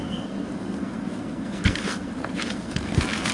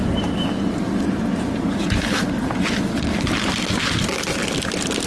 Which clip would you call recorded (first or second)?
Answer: second